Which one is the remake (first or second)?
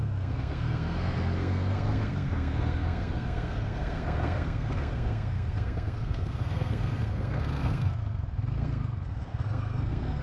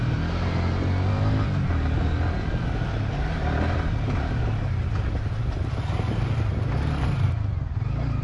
first